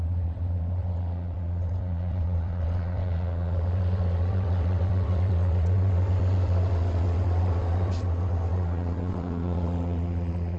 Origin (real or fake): fake